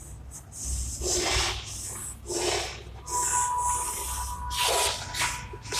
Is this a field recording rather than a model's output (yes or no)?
yes